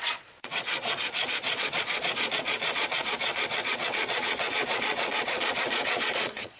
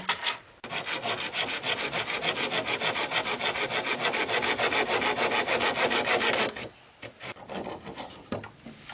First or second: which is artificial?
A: first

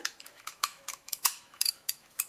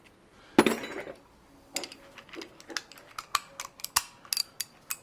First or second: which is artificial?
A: first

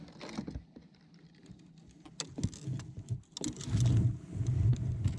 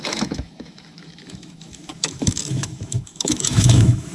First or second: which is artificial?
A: second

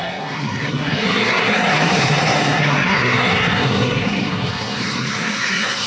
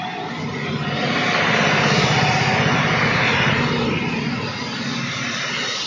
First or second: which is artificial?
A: first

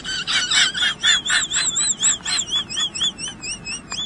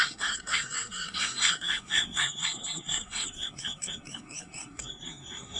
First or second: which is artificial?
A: second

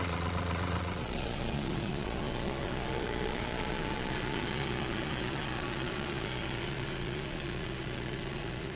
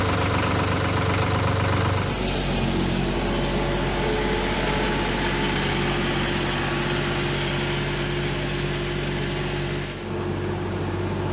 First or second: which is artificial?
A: first